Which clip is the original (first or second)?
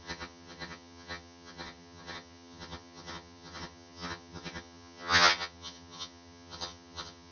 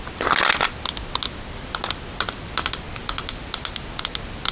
second